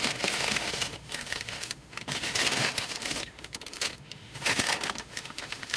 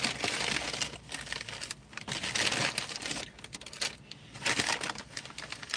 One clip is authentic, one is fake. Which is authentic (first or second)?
second